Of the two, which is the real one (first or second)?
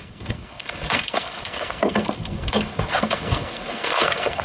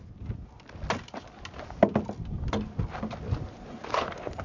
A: second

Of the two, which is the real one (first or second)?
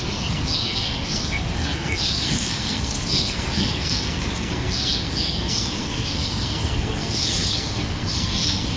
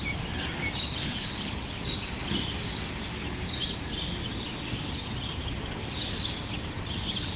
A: second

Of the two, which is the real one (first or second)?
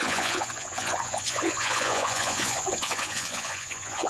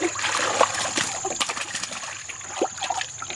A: second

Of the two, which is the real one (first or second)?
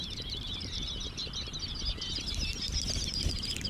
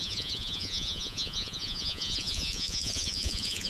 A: first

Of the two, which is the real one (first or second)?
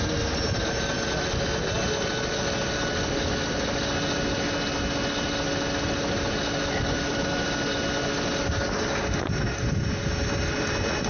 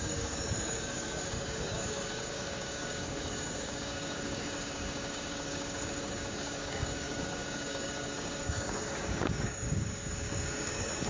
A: first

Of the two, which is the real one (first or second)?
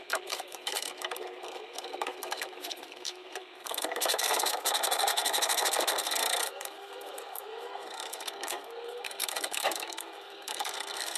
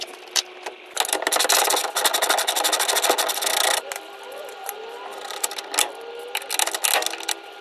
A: second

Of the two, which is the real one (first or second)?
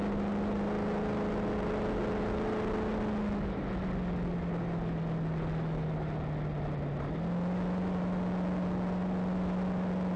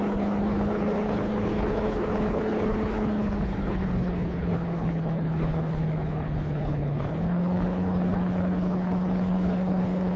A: first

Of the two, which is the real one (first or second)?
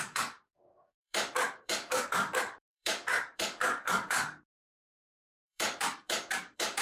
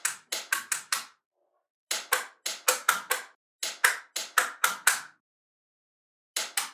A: second